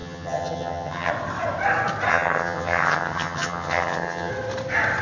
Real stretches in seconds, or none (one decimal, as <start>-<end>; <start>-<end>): 1.1-2.1; 4.3-5.0